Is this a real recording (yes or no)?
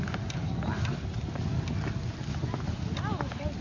yes